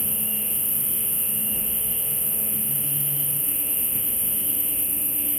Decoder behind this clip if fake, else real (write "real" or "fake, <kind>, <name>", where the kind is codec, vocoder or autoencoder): fake, autoencoder, DAC-VAE